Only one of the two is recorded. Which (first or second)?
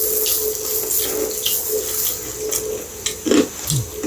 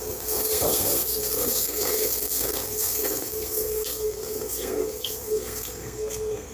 first